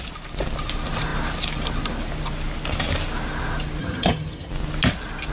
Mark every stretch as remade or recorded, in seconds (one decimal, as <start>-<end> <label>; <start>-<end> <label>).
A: 0.0-3.8 recorded; 3.8-4.5 remade; 4.5-5.3 recorded